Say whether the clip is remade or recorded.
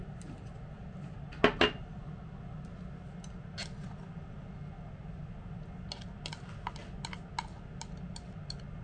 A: recorded